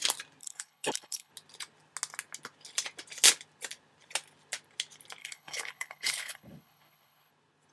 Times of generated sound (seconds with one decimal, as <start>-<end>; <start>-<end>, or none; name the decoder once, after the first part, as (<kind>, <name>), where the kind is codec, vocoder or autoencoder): 0.4-1.3 (codec, HILCodec); 5.2-7.3